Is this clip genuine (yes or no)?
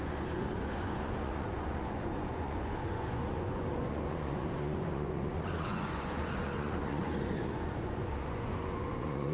no